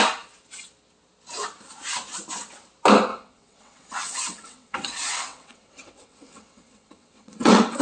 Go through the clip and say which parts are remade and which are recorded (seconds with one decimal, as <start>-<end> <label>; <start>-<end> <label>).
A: 0.0-3.1 recorded; 3.1-7.8 remade